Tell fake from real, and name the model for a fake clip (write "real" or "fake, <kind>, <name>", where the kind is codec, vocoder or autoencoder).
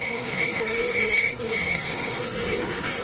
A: fake, codec, SNAC